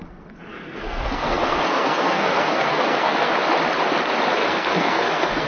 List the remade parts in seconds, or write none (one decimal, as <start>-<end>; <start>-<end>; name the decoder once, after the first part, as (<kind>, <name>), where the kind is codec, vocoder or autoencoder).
0.0-3.3 (codec, SNAC); 4.4-5.5